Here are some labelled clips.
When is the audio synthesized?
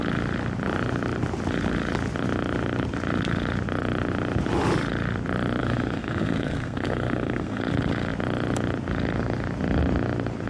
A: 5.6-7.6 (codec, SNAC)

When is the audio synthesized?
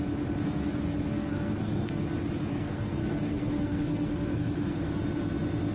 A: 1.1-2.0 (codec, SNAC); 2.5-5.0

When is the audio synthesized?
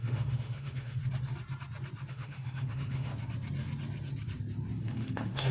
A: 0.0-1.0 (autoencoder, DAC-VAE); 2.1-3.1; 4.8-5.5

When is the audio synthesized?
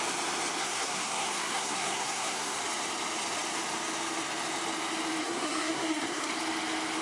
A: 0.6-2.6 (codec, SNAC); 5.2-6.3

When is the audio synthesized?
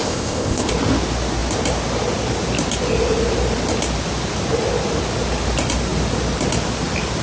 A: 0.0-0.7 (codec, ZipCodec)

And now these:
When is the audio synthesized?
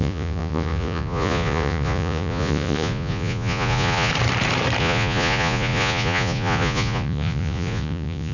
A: 0.0-4.1 (vocoder, Vocos); 4.8-8.3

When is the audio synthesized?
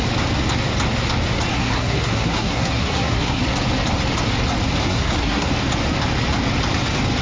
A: 1.5-3.4 (codec, SNAC); 4.8-5.5